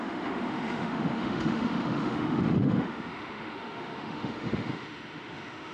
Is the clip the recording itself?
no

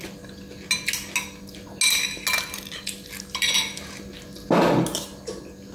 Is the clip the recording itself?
yes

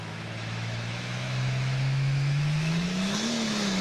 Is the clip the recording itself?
no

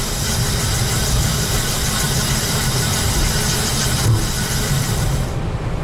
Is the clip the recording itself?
yes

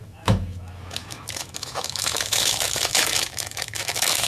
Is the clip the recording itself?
no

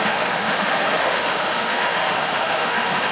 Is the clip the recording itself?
no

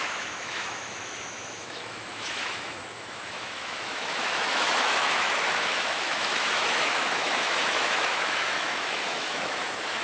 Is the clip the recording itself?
no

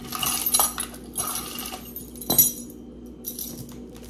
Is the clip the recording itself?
yes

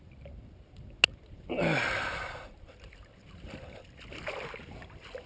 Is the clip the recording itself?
yes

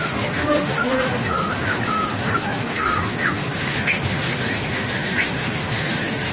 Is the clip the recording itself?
no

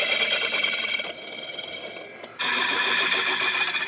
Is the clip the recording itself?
yes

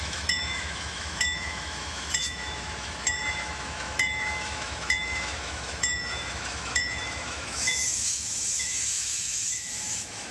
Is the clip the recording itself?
no